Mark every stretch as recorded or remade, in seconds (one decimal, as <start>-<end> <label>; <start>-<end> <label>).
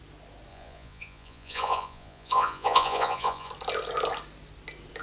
0.0-0.5 recorded; 0.5-3.5 remade; 3.5-5.0 recorded